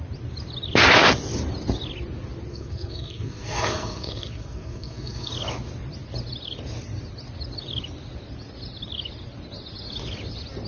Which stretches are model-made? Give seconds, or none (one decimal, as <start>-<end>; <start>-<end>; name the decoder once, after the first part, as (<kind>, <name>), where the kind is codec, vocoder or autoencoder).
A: 2.5-5.3 (codec, SNAC)